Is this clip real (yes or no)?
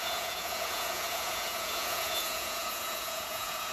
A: no